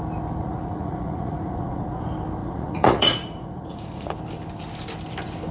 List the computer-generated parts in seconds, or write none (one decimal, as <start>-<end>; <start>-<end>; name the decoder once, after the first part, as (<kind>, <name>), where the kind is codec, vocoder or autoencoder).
0.4-2.0 (vocoder, Vocos); 2.4-4.1